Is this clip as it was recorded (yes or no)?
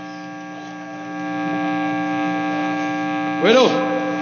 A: yes